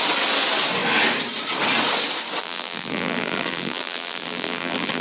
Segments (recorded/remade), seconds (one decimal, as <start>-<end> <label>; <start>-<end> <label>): 0.0-2.4 recorded; 2.4-5.0 remade

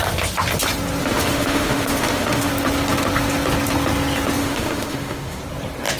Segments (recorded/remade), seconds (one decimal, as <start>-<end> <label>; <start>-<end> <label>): 0.0-1.0 recorded; 1.0-2.5 remade; 2.5-4.4 recorded; 4.4-5.4 remade; 5.4-6.0 recorded

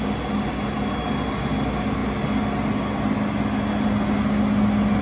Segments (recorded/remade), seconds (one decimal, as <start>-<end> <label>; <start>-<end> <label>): 0.0-5.0 recorded

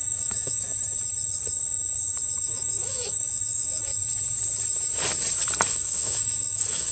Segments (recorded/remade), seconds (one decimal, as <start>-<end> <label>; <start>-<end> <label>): 0.0-0.7 remade; 0.7-2.4 recorded; 2.4-3.9 remade; 3.9-5.7 recorded; 5.7-6.9 remade

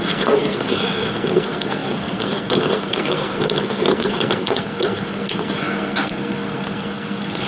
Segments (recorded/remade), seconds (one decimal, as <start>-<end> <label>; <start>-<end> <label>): 0.0-7.5 remade

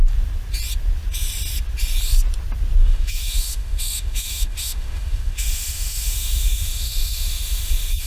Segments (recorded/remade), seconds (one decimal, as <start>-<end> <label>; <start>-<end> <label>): 0.0-2.8 recorded; 2.8-8.1 remade